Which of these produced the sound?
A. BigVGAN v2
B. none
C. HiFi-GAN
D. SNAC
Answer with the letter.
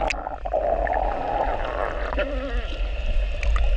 B